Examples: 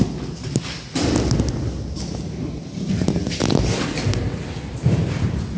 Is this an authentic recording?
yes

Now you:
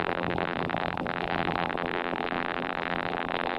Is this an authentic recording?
no